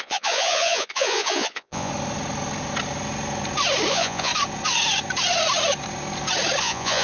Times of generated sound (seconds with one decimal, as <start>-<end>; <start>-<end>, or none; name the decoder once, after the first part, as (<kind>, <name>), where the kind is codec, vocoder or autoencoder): 0.0-1.9 (vocoder, Vocos); 3.9-4.3; 6.6-7.0